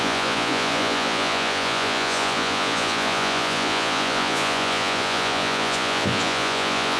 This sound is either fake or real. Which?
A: fake